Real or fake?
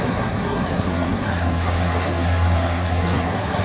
fake